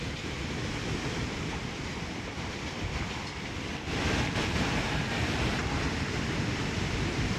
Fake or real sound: fake